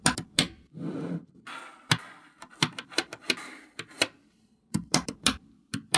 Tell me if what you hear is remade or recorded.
remade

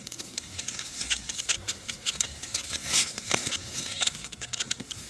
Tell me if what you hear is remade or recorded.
remade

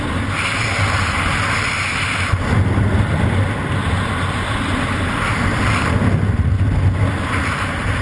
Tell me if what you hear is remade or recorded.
recorded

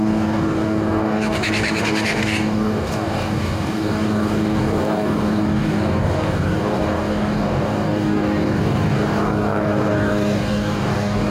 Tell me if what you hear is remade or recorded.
remade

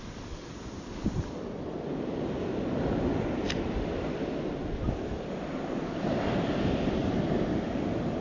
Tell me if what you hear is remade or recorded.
recorded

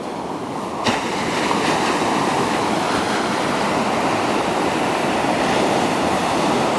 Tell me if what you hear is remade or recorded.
remade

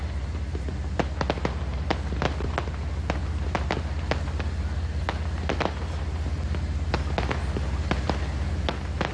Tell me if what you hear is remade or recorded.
recorded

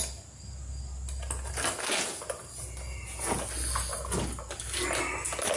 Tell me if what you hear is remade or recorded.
recorded